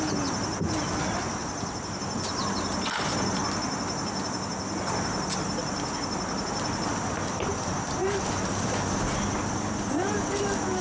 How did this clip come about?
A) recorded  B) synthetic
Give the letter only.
A